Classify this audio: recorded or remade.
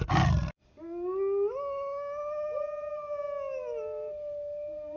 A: recorded